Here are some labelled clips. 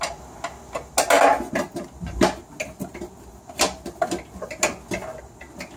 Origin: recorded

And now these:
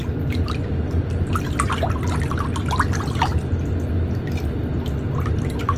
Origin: recorded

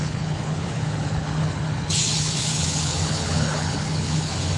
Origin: remade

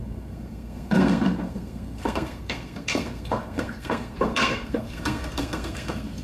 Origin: remade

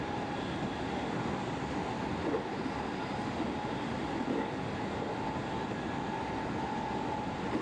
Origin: recorded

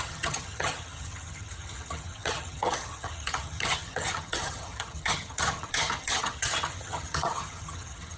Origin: remade